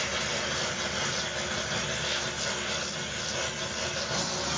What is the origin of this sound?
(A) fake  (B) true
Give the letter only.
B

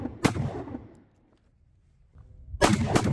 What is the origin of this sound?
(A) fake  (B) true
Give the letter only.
B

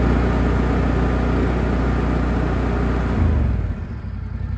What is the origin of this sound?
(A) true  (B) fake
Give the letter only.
A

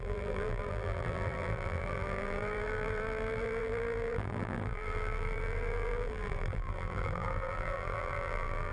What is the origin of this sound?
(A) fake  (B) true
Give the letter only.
A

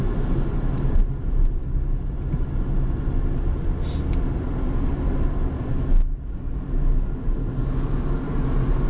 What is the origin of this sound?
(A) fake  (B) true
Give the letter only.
B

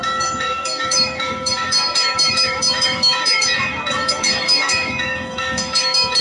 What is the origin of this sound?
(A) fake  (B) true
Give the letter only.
A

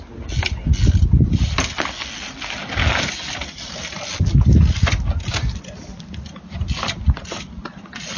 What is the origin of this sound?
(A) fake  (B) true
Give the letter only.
B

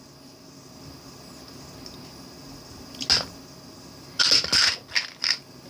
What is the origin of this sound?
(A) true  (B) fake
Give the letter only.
A